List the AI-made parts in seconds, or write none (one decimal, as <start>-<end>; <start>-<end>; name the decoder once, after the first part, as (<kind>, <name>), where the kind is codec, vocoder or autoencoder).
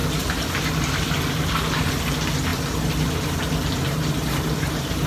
none